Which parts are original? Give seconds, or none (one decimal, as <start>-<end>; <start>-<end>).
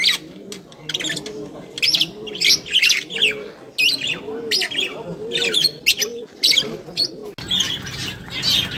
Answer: 0.0-8.8